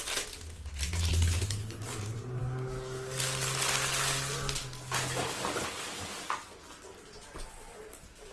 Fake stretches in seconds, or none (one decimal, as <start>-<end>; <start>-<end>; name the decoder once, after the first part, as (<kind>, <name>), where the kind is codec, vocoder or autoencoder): 1.1-1.8 (codec, HILCodec)